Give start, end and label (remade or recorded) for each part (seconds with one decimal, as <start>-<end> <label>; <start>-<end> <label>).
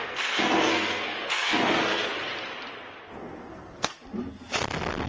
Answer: 0.0-2.3 remade; 2.3-3.2 recorded; 3.2-4.0 remade; 4.0-5.1 recorded